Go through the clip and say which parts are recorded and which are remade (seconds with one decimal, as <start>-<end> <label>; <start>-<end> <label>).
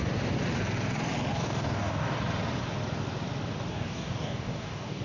0.0-1.3 recorded; 1.3-2.2 remade; 2.2-3.7 recorded; 3.7-5.0 remade